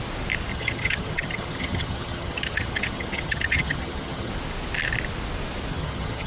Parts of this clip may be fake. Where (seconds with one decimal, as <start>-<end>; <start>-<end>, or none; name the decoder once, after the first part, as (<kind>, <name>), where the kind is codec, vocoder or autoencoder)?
0.5-4.3 (vocoder, HiFi-GAN); 5.7-6.3